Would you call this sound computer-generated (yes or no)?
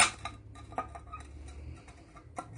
no